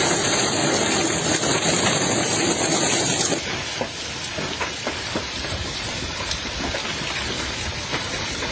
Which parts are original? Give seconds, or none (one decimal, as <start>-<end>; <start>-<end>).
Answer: 0.6-1.8; 2.7-4.7